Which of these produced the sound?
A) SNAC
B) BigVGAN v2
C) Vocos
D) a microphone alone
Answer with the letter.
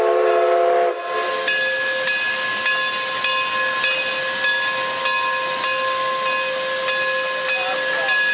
D